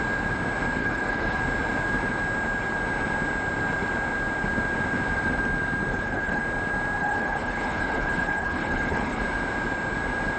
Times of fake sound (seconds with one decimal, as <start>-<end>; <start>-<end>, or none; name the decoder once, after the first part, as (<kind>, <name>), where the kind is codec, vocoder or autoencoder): 0.8-1.4 (codec, HILCodec); 5.9-6.4; 7.0-9.2